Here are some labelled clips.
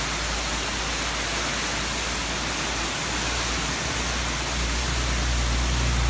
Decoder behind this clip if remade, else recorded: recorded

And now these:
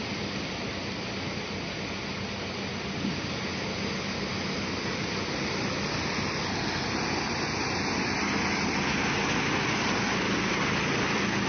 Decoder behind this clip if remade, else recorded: recorded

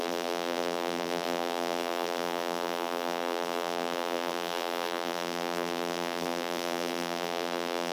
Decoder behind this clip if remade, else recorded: remade, vocoder, BigVGAN v2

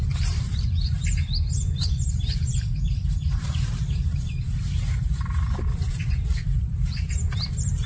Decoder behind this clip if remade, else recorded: remade, vocoder, BigVGAN v2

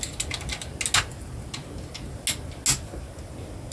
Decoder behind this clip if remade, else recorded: recorded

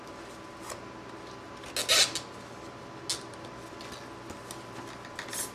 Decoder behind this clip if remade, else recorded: recorded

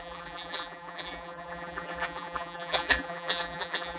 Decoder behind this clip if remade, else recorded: remade, vocoder, BigVGAN v2